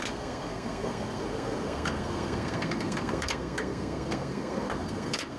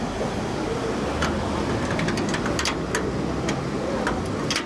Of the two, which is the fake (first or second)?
first